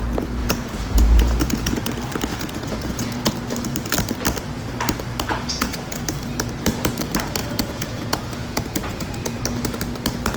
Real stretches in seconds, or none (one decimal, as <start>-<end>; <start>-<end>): 0.0-0.4; 1.9-2.3; 3.3-5.3; 6.0-7.4; 9.4-10.4

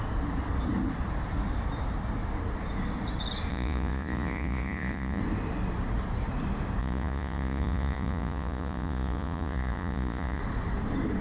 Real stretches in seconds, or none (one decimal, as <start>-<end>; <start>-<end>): 0.0-3.5; 5.2-6.8; 10.4-11.2

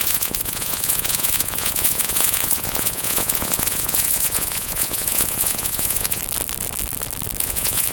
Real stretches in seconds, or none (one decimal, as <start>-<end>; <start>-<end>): 6.2-7.4